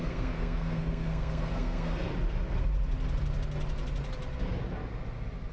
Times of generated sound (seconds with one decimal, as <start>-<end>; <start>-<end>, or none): 0.0-2.1